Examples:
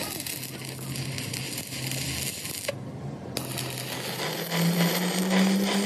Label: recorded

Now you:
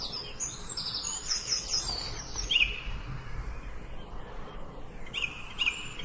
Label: recorded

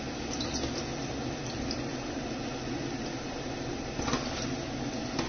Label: recorded